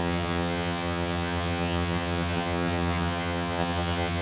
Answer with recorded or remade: remade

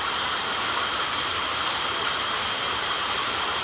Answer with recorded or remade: remade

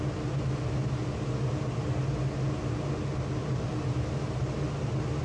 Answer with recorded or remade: recorded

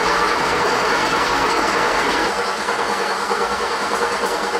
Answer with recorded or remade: remade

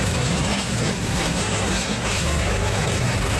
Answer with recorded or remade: remade